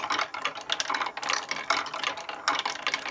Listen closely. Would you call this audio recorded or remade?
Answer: recorded